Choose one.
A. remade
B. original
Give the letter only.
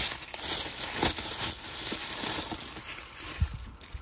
B